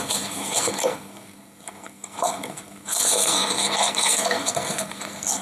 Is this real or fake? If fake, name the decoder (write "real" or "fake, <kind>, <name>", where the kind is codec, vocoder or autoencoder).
fake, codec, SNAC